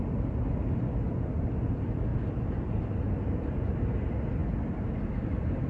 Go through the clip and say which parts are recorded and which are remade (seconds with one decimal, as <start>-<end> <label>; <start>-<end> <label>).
0.0-5.7 recorded